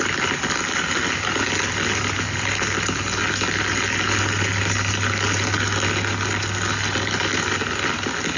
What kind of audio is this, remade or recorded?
recorded